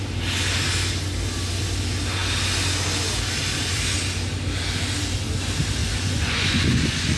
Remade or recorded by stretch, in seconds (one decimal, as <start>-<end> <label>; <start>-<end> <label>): 0.0-5.8 recorded; 5.8-7.2 remade